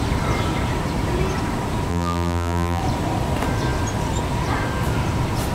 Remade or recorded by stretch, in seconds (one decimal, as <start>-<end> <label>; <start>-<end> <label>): 0.0-1.9 recorded; 1.9-2.8 remade; 2.8-5.5 recorded